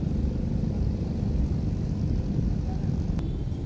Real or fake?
real